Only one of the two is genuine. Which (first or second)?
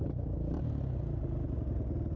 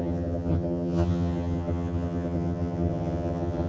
first